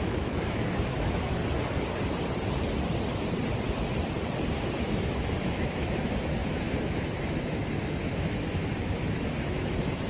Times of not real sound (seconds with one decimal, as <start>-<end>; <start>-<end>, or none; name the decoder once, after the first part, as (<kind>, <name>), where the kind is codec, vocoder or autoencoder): 0.0-1.4 (autoencoder, DAC-VAE); 4.8-10.1